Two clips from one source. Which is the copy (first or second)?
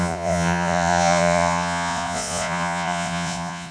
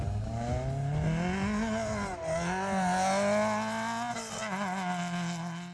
first